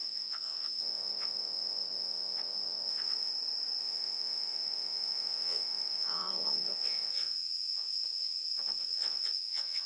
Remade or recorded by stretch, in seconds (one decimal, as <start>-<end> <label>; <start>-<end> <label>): 0.0-3.3 remade; 3.3-3.8 recorded; 3.8-9.9 remade